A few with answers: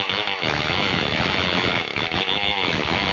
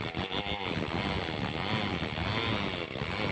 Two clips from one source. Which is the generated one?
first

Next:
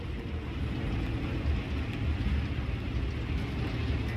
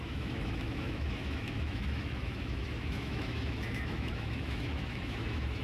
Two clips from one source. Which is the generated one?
second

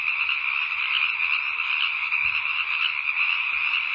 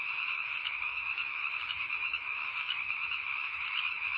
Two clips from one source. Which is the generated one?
second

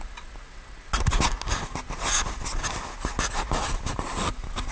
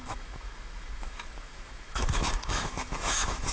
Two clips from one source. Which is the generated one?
second